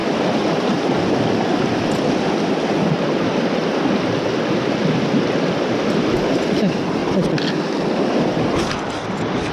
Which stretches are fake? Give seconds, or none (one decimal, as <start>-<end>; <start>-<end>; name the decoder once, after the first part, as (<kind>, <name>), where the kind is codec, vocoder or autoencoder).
0.0-3.6 (vocoder, BigVGAN v2); 6.4-9.5